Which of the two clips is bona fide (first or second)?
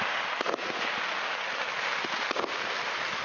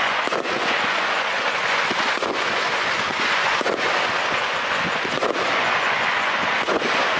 first